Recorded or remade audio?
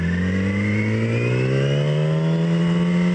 recorded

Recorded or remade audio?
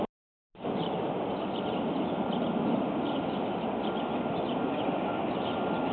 recorded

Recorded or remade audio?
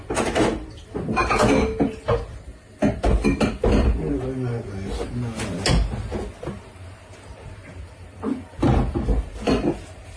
recorded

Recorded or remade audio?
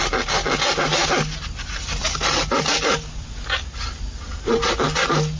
recorded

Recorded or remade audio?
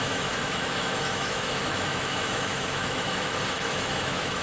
remade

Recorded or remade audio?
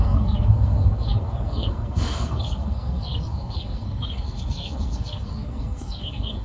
remade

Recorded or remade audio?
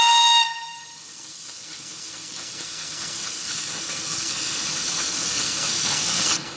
remade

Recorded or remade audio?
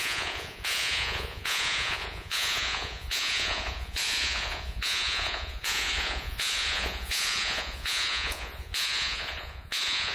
remade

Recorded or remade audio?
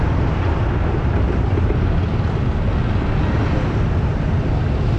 recorded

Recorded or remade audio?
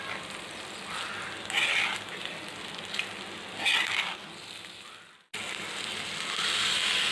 recorded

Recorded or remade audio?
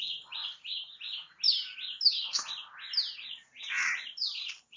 recorded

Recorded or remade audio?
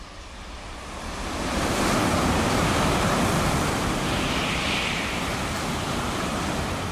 remade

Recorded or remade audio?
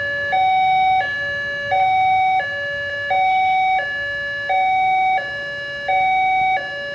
recorded